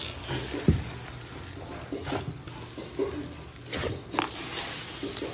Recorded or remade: recorded